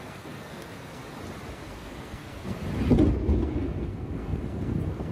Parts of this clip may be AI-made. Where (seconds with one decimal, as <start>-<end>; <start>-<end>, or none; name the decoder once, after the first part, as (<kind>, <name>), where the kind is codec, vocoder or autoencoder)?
0.0-1.0 (codec, SNAC); 1.5-2.6; 3.1-5.1

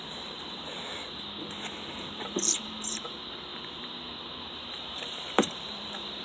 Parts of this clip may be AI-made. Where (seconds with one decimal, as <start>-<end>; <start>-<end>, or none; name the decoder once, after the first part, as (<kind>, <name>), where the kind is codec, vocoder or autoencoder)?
0.0-0.7 (vocoder, BigVGAN v2); 1.9-3.5; 4.2-6.2

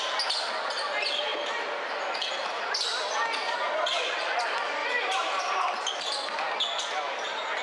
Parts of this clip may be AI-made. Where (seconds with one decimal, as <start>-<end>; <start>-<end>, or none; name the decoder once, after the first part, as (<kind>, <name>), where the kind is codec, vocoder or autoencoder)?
4.8-5.4 (vocoder, BigVGAN v2)